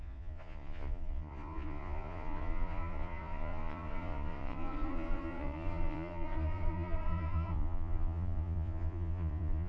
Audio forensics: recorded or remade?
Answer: remade